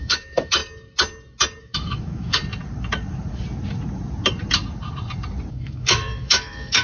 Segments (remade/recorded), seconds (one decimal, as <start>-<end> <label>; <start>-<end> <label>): 0.0-0.6 remade; 0.6-1.6 recorded; 1.6-2.4 remade; 2.4-5.5 recorded; 5.5-6.8 remade

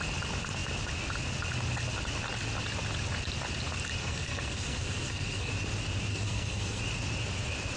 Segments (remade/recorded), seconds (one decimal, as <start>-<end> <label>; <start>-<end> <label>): 0.0-4.0 recorded; 4.0-5.5 remade; 5.5-6.1 recorded; 6.1-6.8 remade; 6.8-7.8 recorded

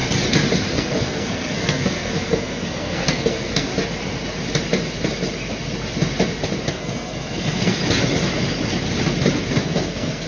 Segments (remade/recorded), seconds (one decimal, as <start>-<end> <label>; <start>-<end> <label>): 0.0-0.7 recorded; 0.7-3.7 remade; 3.7-6.7 recorded; 6.7-7.8 remade; 7.8-9.5 recorded; 9.5-10.3 remade